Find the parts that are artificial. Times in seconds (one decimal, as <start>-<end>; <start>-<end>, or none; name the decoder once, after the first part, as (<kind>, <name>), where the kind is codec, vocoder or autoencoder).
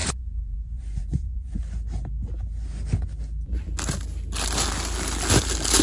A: 0.0-1.6 (vocoder, Vocos)